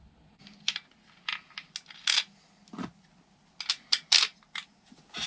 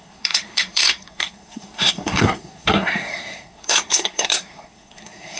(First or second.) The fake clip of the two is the second